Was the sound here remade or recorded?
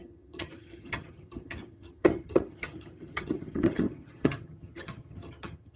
remade